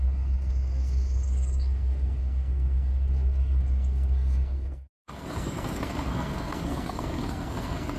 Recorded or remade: remade